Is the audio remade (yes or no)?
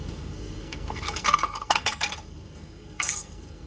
yes